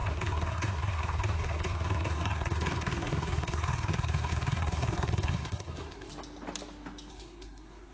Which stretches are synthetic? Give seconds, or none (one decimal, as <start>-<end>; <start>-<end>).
0.0-6.1; 7.1-7.9